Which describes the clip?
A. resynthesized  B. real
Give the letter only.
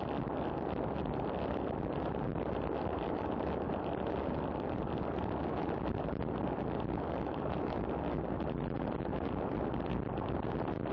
B